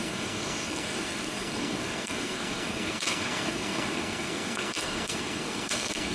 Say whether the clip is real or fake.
fake